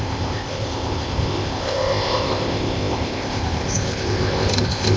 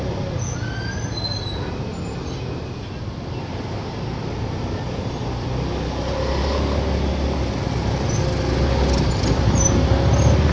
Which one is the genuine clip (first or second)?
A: second